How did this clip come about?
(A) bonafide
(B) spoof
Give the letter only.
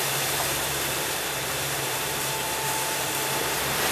B